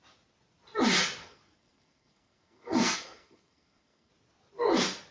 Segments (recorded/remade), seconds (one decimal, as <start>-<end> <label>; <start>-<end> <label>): 0.0-1.2 recorded; 1.2-4.1 remade; 4.1-5.1 recorded